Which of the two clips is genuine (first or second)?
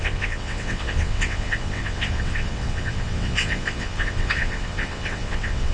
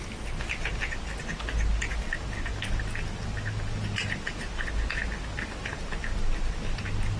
second